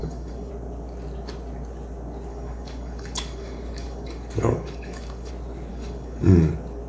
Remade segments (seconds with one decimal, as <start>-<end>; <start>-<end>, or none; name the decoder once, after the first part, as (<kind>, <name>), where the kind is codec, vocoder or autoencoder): 0.0-0.5 (codec, DAC); 2.3-5.3; 5.7-6.5